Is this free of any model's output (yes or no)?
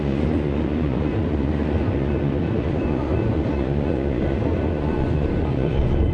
no